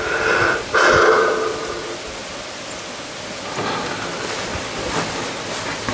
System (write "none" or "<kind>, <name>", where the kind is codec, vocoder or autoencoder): none